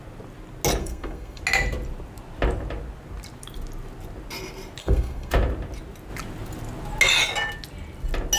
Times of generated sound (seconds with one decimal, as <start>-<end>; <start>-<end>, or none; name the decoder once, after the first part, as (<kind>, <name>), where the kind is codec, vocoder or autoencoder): 0.8-1.4 (codec, SNAC); 4.8-5.3